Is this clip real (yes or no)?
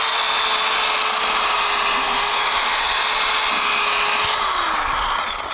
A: yes